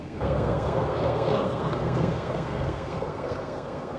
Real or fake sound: fake